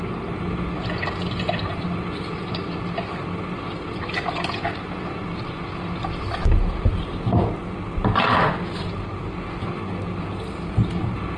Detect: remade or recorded recorded